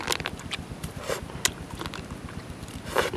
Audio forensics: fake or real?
real